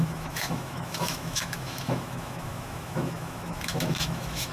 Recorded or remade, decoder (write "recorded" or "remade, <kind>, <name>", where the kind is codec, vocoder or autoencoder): remade, autoencoder, DAC-VAE